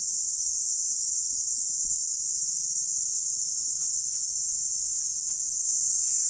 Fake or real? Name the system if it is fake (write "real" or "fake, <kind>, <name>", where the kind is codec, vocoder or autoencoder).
real